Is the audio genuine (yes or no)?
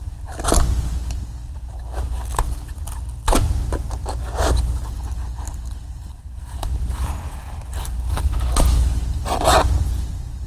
yes